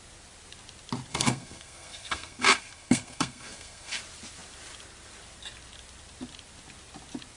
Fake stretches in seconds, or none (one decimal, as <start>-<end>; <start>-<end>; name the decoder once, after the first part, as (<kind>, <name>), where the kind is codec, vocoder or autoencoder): 1.1-4.0 (codec, SNAC)